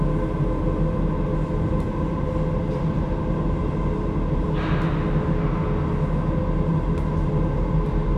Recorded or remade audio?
recorded